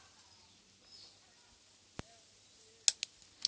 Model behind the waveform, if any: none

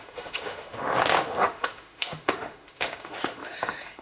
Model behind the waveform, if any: autoencoder, DAC-VAE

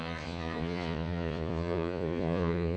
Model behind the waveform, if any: vocoder, Vocos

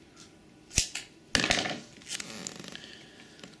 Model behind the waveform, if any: none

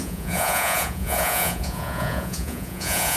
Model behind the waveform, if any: vocoder, Vocos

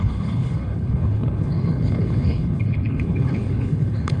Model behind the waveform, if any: codec, HILCodec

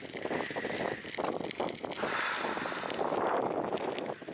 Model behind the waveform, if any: none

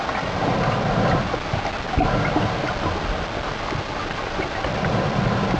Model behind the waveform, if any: none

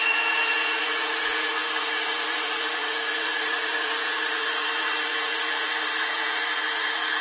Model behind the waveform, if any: vocoder, Vocos